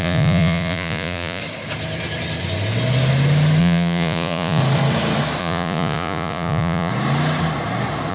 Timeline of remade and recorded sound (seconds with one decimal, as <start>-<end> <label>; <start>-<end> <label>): 0.0-1.4 remade; 1.4-3.6 recorded; 3.6-4.6 remade; 4.6-5.4 recorded; 5.4-6.9 remade; 6.9-8.1 recorded